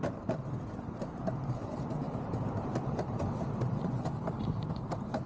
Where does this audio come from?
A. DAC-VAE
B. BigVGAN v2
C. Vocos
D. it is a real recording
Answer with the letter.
B